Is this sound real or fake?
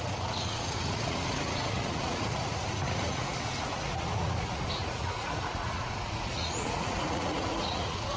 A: fake